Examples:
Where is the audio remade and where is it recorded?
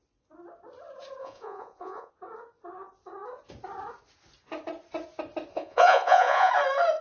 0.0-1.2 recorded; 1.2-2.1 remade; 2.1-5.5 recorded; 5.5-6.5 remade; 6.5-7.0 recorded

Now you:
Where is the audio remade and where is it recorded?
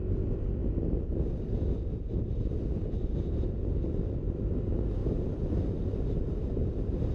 0.0-5.0 recorded; 5.0-5.6 remade; 5.6-6.5 recorded; 6.5-7.1 remade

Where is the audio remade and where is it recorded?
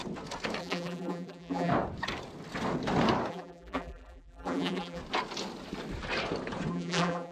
0.0-0.6 recorded; 0.6-1.7 remade; 1.7-3.3 recorded; 3.3-5.0 remade; 5.0-6.7 recorded; 6.7-7.3 remade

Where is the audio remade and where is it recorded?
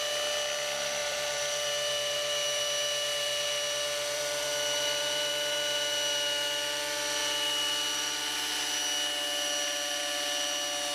0.0-1.0 recorded; 1.0-5.3 remade; 5.3-10.9 recorded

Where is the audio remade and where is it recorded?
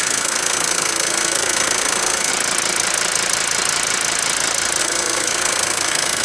0.0-2.3 remade; 2.3-4.8 recorded; 4.8-6.2 remade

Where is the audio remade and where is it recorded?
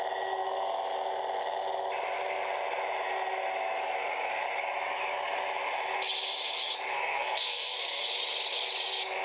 0.0-6.9 recorded; 6.9-8.0 remade; 8.0-9.2 recorded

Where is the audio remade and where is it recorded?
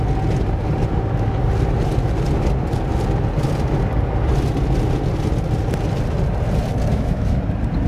0.0-6.9 recorded; 6.9-7.4 remade; 7.4-7.9 recorded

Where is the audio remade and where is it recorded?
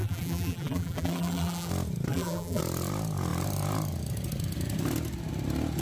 0.0-1.7 remade; 1.7-2.1 recorded; 2.1-2.6 remade; 2.6-5.8 recorded